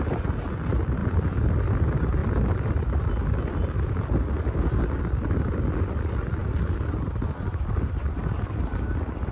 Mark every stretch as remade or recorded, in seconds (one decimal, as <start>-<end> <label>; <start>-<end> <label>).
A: 0.0-1.0 recorded; 1.0-1.5 remade; 1.5-2.2 recorded; 2.2-2.7 remade; 2.7-6.4 recorded; 6.4-7.4 remade; 7.4-9.3 recorded